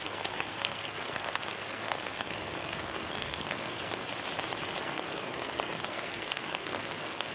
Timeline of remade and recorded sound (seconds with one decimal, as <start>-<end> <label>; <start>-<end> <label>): 0.0-4.0 remade; 4.0-4.8 recorded; 4.8-7.3 remade